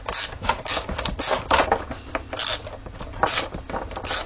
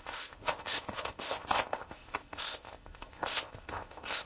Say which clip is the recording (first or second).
first